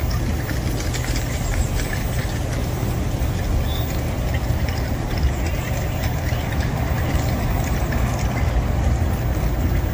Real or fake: real